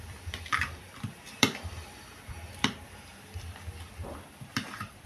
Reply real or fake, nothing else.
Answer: fake